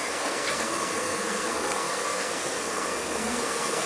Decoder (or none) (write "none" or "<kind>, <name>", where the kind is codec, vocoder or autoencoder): codec, SNAC